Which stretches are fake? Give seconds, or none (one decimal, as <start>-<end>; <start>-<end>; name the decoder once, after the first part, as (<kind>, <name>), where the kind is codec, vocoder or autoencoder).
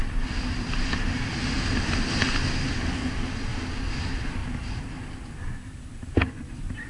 none